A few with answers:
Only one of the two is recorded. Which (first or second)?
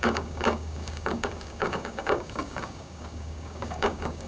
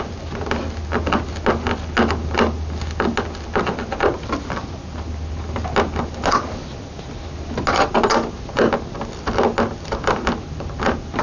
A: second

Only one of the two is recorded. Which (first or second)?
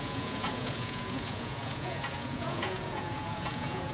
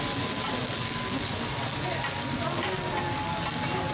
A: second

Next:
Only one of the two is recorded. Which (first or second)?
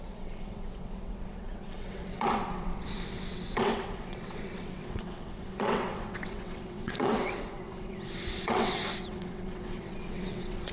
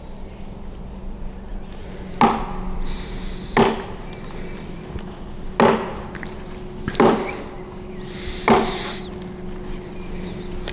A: second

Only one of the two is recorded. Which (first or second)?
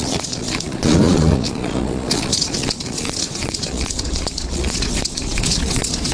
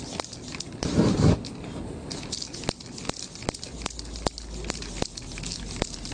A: second